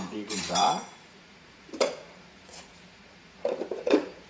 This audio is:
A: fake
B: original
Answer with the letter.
A